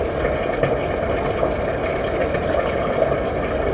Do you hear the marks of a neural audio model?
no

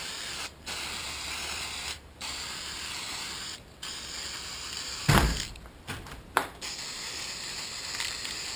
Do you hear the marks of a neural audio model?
yes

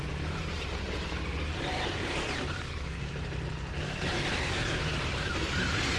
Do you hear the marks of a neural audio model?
yes